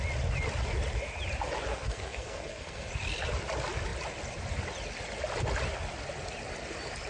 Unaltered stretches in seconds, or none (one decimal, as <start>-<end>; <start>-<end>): 0.0-1.7; 2.9-7.1